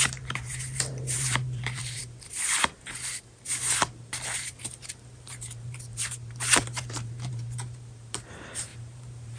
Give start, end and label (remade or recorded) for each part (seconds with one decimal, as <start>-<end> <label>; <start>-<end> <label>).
0.0-9.4 remade